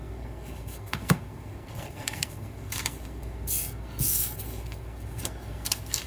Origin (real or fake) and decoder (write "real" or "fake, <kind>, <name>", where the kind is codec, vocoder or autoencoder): fake, codec, SNAC